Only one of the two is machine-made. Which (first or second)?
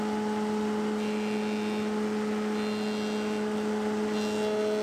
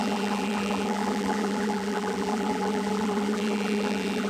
second